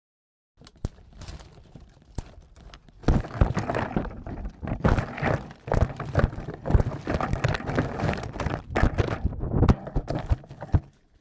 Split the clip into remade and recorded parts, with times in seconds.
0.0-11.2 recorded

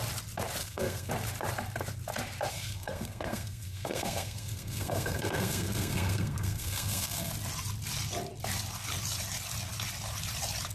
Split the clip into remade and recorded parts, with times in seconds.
0.0-0.6 recorded; 0.6-1.1 remade; 1.1-2.5 recorded; 2.5-7.3 remade; 7.3-10.7 recorded

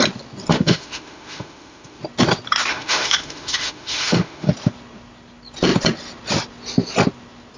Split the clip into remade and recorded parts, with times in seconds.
0.0-0.5 recorded; 0.5-2.0 remade; 2.0-2.7 recorded; 2.7-4.5 remade; 4.5-7.6 recorded

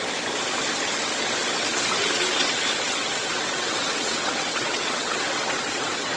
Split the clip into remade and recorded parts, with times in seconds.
0.0-2.3 recorded; 2.3-6.2 remade

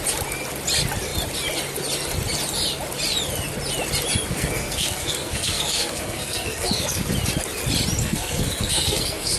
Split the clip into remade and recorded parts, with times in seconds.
0.0-4.3 recorded; 4.3-7.1 remade; 7.1-8.0 recorded; 8.0-9.4 remade

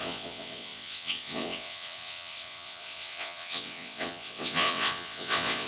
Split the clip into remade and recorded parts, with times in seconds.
0.0-5.7 remade

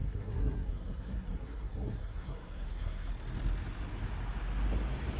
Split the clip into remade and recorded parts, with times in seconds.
0.0-3.1 remade; 3.1-5.2 recorded

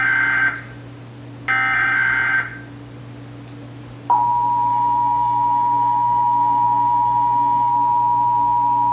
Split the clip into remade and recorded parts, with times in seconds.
0.0-4.7 recorded; 4.7-7.7 remade; 7.7-8.9 recorded